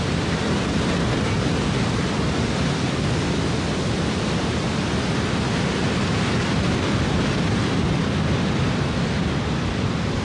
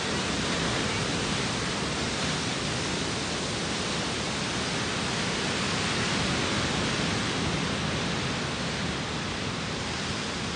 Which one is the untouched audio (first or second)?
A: second